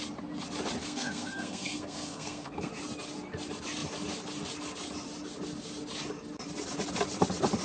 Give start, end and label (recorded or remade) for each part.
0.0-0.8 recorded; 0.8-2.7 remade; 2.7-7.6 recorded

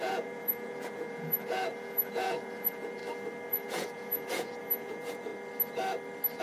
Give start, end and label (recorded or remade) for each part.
0.0-3.0 remade; 3.0-3.5 recorded; 3.5-5.3 remade; 5.3-6.4 recorded

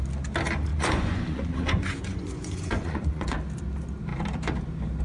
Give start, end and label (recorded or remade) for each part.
0.0-0.7 recorded; 0.7-3.4 remade; 3.4-5.0 recorded

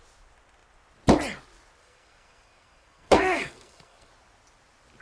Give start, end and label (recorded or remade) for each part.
0.0-1.8 recorded; 1.8-4.1 remade; 4.1-5.0 recorded

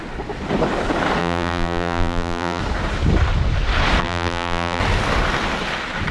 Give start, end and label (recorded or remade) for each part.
0.0-1.2 recorded; 1.2-2.6 remade; 2.6-4.0 recorded; 4.0-4.8 remade; 4.8-6.1 recorded

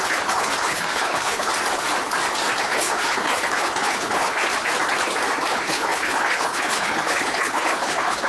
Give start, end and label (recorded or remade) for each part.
0.0-1.5 remade; 1.5-2.6 recorded; 2.6-4.4 remade; 4.4-5.5 recorded; 5.5-8.3 remade